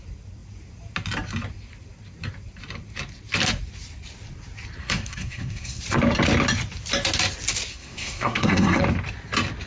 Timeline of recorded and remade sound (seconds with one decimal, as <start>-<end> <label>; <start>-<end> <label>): 0.0-4.8 recorded; 4.8-5.8 remade; 5.8-7.7 recorded; 7.7-8.8 remade; 8.8-9.7 recorded

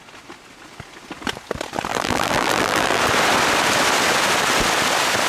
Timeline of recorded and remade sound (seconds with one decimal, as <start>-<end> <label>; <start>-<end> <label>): 0.0-1.9 recorded; 1.9-3.0 remade; 3.0-5.3 recorded

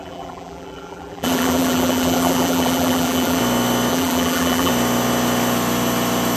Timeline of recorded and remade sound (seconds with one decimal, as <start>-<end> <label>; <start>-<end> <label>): 0.0-3.4 remade; 3.4-3.9 recorded; 3.9-4.7 remade; 4.7-6.4 recorded

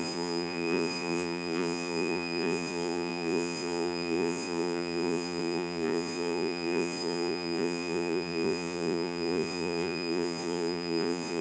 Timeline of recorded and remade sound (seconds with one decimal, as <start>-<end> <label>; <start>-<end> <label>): 0.0-11.4 remade

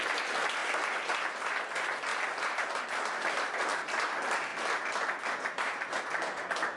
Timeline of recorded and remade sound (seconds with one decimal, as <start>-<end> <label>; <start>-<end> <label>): 0.0-6.8 recorded

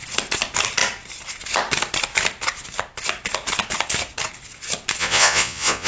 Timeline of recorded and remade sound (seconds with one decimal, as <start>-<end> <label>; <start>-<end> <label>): 0.0-5.0 recorded; 5.0-5.9 remade